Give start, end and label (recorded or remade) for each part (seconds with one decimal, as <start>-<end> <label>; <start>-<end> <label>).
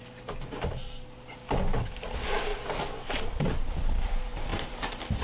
0.0-0.8 remade; 0.8-2.1 recorded; 2.1-5.2 remade